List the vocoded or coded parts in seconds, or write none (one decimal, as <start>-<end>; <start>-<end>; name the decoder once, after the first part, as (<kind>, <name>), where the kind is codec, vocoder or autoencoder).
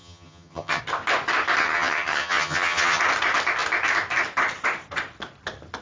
0.0-0.8 (vocoder, HiFi-GAN); 1.6-3.0